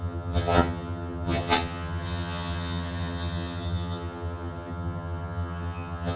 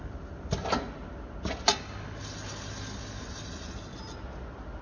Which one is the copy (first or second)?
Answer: first